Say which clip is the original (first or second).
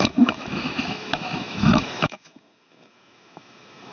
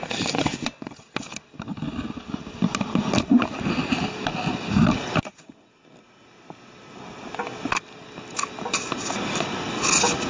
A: second